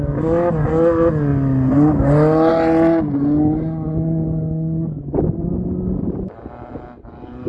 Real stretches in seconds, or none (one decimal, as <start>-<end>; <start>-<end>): 0.0-7.5